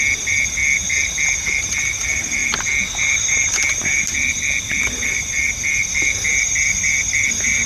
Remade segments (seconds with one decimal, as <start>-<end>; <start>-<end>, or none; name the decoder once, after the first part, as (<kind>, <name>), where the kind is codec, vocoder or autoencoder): none

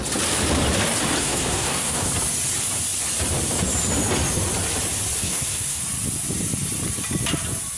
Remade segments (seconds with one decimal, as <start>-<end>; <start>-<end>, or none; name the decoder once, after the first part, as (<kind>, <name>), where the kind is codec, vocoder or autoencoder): 1.2-2.1 (codec, SNAC); 5.2-5.8

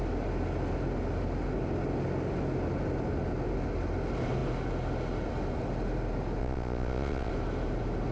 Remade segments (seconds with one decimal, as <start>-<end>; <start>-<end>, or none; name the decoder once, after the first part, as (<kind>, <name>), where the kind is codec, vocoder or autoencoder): 6.4-7.3 (vocoder, Vocos)

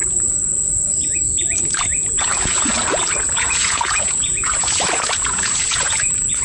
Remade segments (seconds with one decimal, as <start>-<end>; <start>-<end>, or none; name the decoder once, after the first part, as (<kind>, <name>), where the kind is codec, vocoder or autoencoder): 0.0-6.4 (vocoder, Vocos)

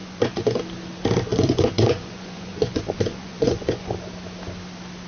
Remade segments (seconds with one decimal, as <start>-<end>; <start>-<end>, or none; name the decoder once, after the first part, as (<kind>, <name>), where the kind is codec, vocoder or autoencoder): 0.0-0.6 (vocoder, Vocos); 1.3-3.9